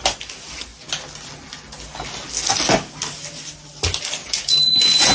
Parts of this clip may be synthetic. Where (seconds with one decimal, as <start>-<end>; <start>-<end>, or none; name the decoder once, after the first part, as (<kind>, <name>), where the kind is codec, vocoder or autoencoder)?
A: 4.2-5.1 (vocoder, Vocos)